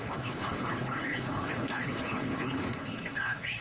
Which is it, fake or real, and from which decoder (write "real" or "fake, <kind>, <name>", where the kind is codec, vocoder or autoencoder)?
fake, codec, HILCodec